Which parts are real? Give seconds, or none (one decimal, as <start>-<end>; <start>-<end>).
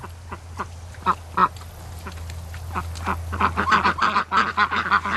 0.0-5.2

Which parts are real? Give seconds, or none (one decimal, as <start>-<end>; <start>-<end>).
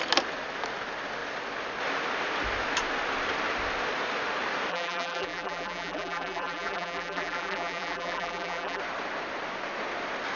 0.0-4.7; 8.8-10.4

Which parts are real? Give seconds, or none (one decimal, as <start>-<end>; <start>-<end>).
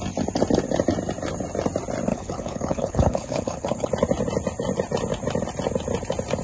0.0-2.1; 3.9-6.4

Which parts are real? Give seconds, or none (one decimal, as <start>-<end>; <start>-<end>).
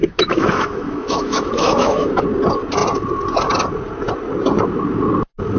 2.2-5.6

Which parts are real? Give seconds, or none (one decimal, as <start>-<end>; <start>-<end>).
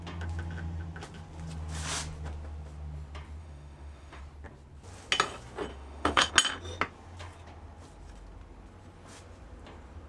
0.0-3.4; 4.2-5.7; 6.3-10.1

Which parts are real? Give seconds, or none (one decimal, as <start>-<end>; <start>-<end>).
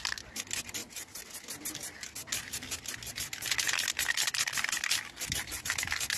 0.0-6.2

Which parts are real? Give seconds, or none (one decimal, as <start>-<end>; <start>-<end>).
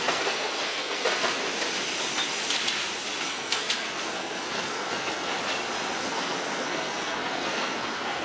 1.4-3.2; 5.3-6.0